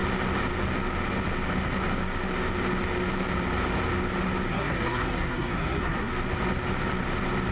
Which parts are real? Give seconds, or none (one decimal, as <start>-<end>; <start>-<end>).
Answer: 0.0-4.5; 6.1-7.5